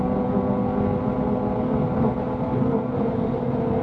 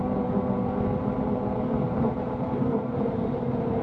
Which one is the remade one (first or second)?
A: second